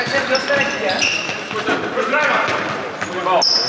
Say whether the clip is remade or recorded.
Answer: recorded